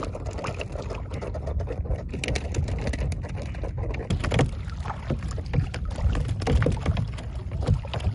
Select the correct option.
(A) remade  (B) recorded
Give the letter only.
B